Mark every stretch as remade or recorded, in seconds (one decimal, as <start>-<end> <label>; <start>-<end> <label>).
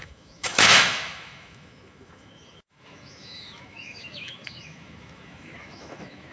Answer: 0.0-6.3 remade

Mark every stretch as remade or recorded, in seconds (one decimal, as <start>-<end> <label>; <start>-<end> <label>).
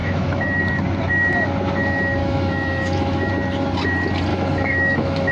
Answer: 0.0-0.6 remade; 0.6-2.2 recorded; 2.2-3.3 remade; 3.3-4.3 recorded; 4.3-5.3 remade